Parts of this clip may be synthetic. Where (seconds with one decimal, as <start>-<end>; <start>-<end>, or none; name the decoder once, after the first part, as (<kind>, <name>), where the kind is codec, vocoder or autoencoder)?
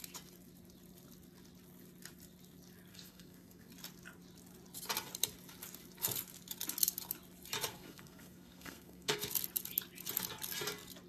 2.9-3.7 (codec, SNAC); 7.7-9.3